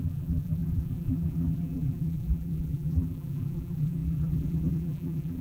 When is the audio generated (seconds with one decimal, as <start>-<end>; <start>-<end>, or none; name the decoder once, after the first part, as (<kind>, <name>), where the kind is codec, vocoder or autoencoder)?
0.0-5.4 (vocoder, BigVGAN v2)